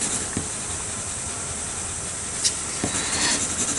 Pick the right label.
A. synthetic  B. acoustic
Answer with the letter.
B